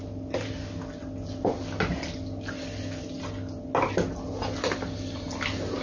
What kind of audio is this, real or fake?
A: real